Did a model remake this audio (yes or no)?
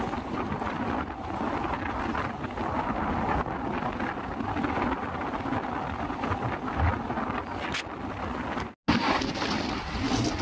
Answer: no